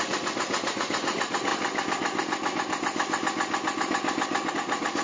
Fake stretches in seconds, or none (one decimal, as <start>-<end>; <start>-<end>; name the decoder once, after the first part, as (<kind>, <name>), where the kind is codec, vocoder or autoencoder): 0.0-1.5 (vocoder, Vocos); 4.5-5.0